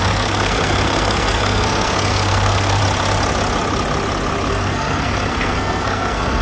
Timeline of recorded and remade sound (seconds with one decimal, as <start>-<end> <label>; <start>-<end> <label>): 0.0-2.8 remade; 2.8-4.5 recorded; 4.5-6.4 remade